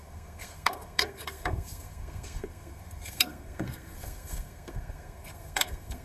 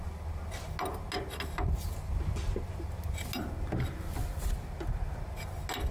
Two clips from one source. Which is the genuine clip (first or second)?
second